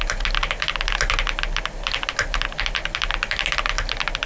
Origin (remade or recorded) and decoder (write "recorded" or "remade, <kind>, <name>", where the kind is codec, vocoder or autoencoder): recorded